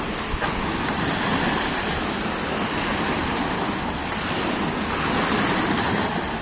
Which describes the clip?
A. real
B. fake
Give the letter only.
A